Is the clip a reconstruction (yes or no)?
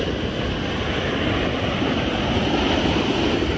no